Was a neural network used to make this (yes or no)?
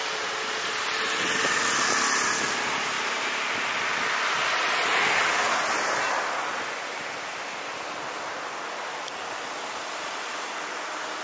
no